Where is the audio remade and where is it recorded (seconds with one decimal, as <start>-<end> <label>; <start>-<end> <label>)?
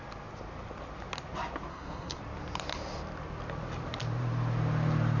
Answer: 0.0-1.7 recorded; 1.7-2.2 remade; 2.2-5.2 recorded